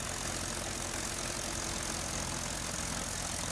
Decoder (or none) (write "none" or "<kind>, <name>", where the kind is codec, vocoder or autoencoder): vocoder, BigVGAN v2